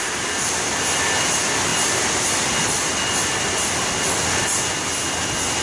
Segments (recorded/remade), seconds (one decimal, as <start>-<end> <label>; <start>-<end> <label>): 0.0-5.6 recorded